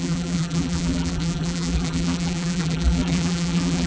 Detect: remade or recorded remade